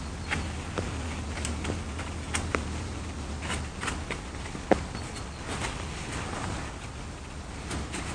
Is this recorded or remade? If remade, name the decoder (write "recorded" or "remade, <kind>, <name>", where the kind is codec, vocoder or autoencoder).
recorded